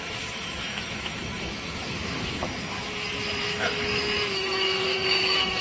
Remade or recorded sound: remade